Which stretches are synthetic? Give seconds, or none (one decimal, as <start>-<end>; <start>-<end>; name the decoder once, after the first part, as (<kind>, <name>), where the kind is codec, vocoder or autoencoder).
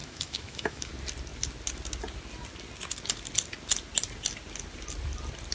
0.0-0.9 (autoencoder, DAC-VAE)